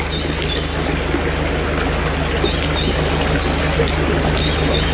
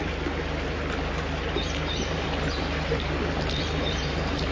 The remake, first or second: second